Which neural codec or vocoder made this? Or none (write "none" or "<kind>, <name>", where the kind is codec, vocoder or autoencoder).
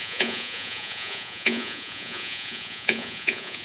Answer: vocoder, Vocos